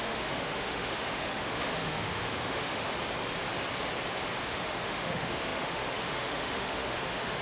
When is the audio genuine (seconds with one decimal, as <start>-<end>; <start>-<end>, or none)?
2.9-4.5